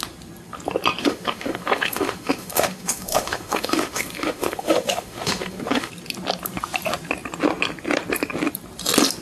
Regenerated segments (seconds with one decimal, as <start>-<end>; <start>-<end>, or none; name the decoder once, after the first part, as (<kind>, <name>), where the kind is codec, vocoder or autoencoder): 1.0-5.9 (autoencoder, DAC-VAE)